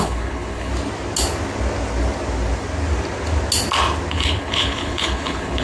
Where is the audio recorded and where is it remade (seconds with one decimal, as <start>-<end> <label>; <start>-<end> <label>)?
0.0-0.7 remade; 0.7-4.1 recorded; 4.1-5.6 remade